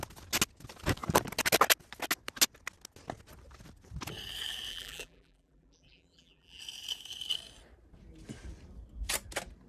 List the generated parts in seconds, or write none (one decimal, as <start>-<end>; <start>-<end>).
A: 4.7-6.6